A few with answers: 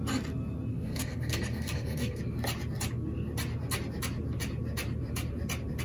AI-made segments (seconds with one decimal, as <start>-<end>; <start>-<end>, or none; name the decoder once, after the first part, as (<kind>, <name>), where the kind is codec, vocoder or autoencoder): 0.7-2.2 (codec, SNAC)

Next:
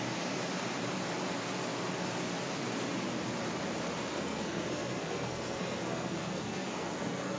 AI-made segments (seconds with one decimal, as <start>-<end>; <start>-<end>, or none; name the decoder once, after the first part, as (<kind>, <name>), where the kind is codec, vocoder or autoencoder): 4.1-7.4 (codec, SNAC)

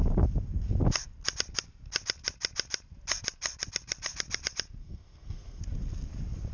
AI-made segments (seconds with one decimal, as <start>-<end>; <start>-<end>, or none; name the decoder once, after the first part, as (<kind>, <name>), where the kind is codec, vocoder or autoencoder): 4.8-5.6 (codec, SNAC)

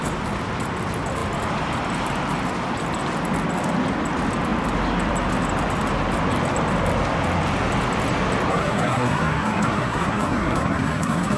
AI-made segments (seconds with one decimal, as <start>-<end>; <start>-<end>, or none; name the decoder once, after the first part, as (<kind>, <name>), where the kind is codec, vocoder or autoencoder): 8.5-11.4 (codec, SNAC)

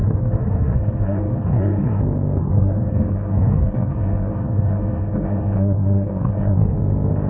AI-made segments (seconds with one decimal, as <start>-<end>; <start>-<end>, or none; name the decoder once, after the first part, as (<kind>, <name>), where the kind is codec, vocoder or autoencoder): 0.0-2.0 (codec, SNAC); 2.4-6.8

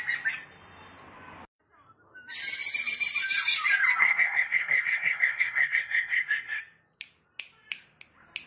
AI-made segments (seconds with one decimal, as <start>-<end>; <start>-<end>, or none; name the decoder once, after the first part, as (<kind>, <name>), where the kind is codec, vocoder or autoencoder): 4.0-6.6 (codec, SNAC)

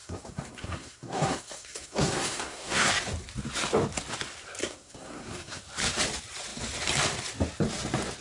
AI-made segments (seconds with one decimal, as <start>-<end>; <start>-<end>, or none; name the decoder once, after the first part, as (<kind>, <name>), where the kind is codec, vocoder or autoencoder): 0.0-2.9 (codec, SNAC); 4.6-5.6

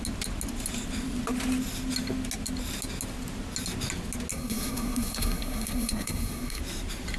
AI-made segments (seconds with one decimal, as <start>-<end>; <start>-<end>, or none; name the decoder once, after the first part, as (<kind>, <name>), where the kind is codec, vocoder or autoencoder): 4.3-6.6 (codec, SNAC)